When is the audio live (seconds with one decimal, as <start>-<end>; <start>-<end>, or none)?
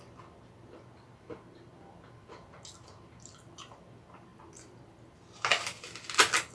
0.0-6.5